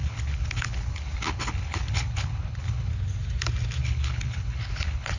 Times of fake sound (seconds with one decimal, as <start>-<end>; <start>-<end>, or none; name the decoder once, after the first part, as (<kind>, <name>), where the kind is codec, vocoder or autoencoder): 0.0-2.9 (codec, HILCodec); 3.8-5.2